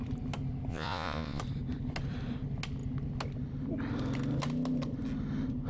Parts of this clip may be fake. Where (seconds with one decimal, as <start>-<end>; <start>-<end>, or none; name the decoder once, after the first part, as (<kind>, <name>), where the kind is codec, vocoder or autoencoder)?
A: 0.7-1.4 (vocoder, Vocos)